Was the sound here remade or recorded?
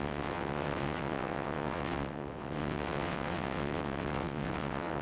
remade